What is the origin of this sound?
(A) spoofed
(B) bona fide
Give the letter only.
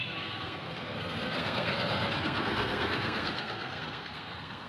A